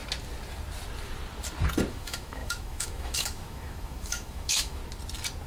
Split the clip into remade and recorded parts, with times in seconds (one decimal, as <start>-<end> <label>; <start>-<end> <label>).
0.0-1.9 recorded; 1.9-4.8 remade; 4.8-5.5 recorded